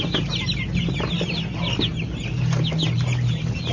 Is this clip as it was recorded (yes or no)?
yes